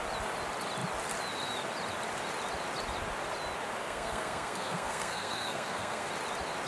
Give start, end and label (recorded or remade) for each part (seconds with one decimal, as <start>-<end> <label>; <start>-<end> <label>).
0.0-3.8 recorded; 3.8-6.1 remade; 6.1-6.7 recorded

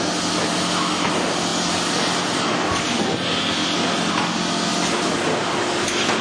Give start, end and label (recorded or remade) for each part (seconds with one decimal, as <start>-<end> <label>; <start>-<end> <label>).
0.0-6.2 recorded

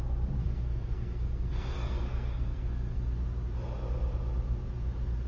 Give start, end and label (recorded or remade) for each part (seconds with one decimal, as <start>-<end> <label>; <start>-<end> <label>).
0.0-0.4 recorded; 0.4-3.0 remade; 3.0-5.3 recorded

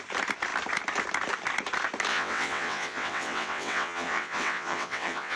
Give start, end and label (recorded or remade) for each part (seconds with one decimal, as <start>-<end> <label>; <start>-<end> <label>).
0.0-2.1 recorded; 2.1-5.4 remade

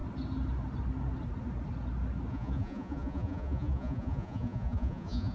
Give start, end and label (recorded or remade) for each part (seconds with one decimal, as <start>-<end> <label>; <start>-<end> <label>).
0.0-2.3 recorded; 2.3-5.3 remade

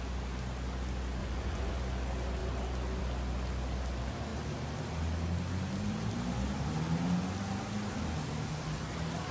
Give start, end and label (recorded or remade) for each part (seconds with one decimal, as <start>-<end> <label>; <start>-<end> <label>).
0.0-1.2 recorded; 1.2-1.7 remade; 1.7-9.3 recorded

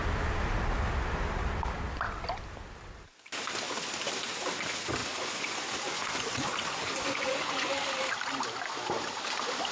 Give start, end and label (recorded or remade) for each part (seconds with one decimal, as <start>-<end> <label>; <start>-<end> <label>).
0.0-5.0 recorded; 5.0-7.7 remade; 7.7-9.7 recorded